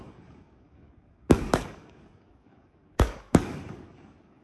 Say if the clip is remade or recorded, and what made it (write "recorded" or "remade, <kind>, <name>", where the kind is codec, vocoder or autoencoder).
remade, codec, DAC